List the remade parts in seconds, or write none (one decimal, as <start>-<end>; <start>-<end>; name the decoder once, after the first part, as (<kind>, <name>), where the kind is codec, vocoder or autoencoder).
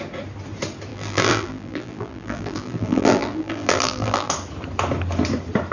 0.9-4.3 (vocoder, BigVGAN v2)